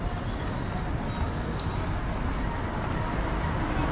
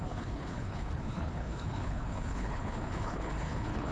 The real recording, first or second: first